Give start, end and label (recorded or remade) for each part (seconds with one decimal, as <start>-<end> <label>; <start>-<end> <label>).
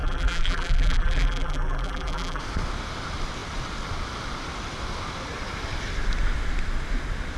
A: 0.0-2.4 remade; 2.4-7.4 recorded